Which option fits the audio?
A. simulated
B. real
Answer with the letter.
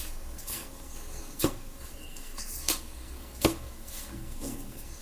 A